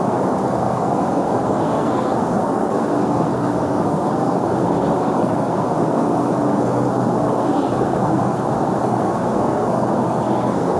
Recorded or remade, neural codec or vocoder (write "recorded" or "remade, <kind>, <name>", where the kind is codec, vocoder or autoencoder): remade, codec, SNAC